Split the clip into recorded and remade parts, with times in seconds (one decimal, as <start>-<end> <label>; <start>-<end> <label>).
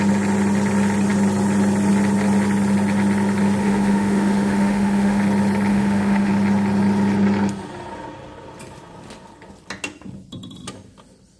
0.0-3.6 recorded; 3.6-5.2 remade; 5.2-5.7 recorded; 5.7-6.3 remade; 6.3-11.4 recorded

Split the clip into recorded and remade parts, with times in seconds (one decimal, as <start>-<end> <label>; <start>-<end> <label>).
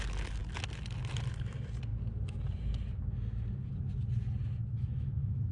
0.0-4.7 recorded; 4.7-5.5 remade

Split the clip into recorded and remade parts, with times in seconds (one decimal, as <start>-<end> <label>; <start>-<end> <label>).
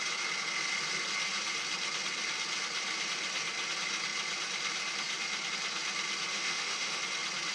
0.0-6.3 recorded; 6.3-7.0 remade; 7.0-7.5 recorded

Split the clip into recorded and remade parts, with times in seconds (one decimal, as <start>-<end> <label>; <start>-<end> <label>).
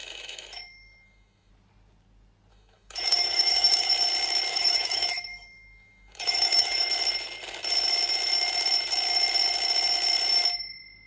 0.0-1.5 remade; 1.5-2.5 recorded; 2.5-3.9 remade; 3.9-4.5 recorded; 4.5-6.9 remade; 6.9-11.1 recorded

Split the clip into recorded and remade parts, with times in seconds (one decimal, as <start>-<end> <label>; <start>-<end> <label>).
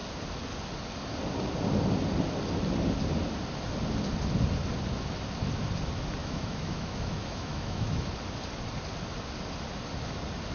0.0-6.2 recorded; 6.2-8.1 remade; 8.1-10.5 recorded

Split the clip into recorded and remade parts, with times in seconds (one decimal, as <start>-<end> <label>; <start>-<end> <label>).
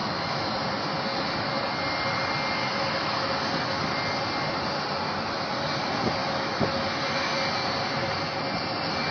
0.0-0.5 remade; 0.5-2.6 recorded; 2.6-3.4 remade; 3.4-6.2 recorded; 6.2-7.3 remade; 7.3-9.1 recorded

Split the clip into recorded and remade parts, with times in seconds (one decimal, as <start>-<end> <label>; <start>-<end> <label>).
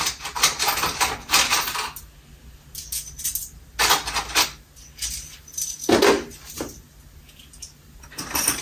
0.0-8.6 recorded